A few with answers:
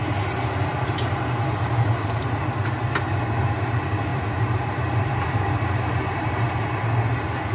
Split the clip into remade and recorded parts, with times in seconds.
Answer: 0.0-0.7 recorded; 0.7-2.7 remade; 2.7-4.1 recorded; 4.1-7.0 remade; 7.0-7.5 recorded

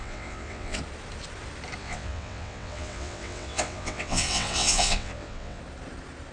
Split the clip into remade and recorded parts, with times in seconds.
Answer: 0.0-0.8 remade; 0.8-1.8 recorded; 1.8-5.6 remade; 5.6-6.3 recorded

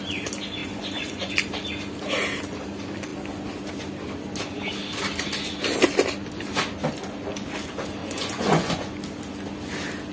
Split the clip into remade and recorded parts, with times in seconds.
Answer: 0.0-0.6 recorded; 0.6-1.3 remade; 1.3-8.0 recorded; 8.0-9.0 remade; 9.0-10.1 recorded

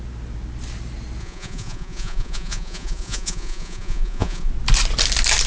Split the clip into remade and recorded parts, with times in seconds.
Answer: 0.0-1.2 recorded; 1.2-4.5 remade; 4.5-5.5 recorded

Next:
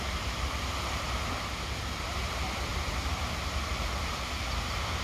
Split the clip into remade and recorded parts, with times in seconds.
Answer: 0.0-2.7 remade; 2.7-3.4 recorded; 3.4-5.0 remade

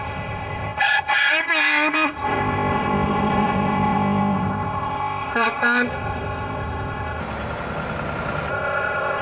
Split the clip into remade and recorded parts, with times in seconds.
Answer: 0.0-7.2 remade; 7.2-8.5 recorded; 8.5-9.2 remade

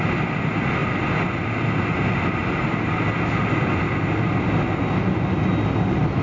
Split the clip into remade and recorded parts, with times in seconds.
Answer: 0.0-6.2 recorded